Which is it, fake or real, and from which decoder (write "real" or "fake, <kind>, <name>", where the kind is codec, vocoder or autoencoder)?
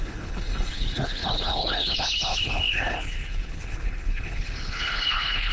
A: fake, codec, HILCodec